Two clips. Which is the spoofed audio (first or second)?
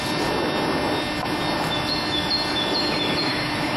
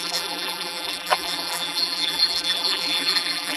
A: second